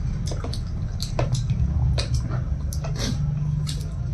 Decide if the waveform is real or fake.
real